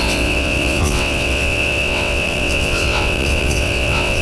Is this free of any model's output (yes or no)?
no